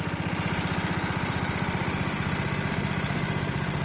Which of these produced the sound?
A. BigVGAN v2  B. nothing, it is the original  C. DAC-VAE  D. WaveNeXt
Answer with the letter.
A